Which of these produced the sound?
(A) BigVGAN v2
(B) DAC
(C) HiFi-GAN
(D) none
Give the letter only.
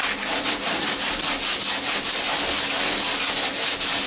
D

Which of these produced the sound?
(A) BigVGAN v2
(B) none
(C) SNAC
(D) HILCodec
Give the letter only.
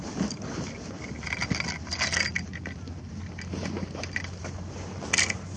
B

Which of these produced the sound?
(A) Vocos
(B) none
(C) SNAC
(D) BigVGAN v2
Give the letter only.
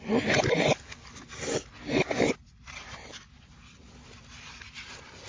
B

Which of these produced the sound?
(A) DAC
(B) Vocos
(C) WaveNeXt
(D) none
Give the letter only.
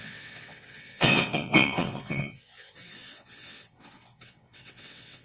C